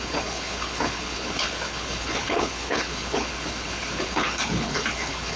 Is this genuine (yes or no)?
no